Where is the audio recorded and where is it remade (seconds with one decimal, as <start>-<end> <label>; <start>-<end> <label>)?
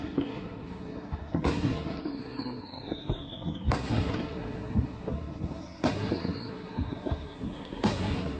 0.0-8.4 remade